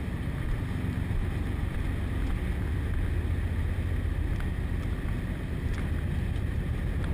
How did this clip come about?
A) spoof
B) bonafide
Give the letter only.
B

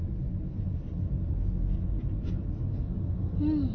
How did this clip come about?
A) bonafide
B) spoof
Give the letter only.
A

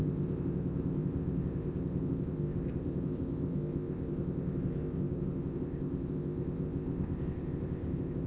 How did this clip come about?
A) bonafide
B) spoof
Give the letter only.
B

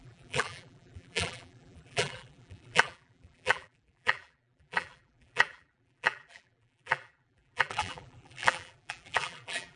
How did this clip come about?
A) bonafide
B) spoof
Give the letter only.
B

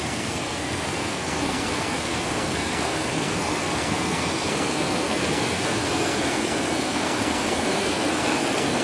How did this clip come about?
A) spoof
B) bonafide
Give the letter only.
A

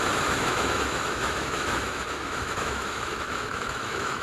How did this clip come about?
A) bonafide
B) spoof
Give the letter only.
B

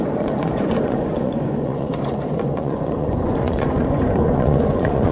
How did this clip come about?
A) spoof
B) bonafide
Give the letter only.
A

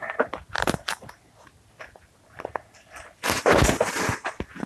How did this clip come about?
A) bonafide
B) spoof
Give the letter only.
A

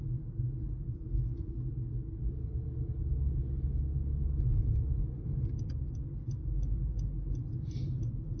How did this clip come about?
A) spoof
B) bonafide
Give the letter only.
B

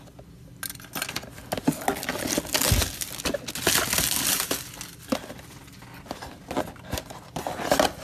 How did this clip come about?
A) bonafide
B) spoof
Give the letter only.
A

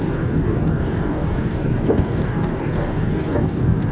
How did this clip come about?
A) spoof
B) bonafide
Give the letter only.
A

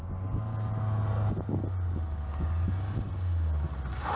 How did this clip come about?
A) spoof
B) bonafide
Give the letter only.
B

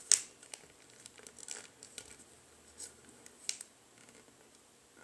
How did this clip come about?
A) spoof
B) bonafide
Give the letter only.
B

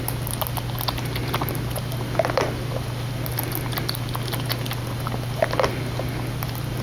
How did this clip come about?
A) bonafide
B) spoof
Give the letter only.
A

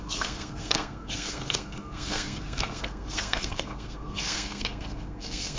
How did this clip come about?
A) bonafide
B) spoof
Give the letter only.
B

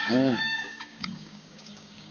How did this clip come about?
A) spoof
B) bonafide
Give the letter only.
A